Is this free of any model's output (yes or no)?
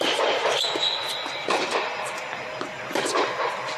yes